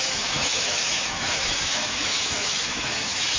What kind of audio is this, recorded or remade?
remade